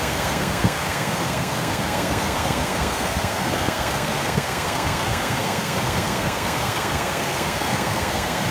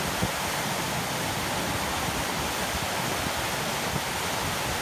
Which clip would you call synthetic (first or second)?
first